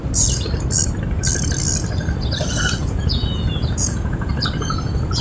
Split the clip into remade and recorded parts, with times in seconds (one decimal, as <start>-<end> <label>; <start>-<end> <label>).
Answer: 0.0-2.8 recorded; 2.8-4.3 remade; 4.3-5.2 recorded